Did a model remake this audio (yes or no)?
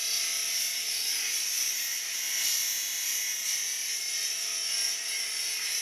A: no